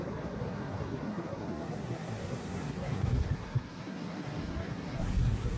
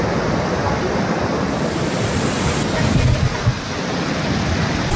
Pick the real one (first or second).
second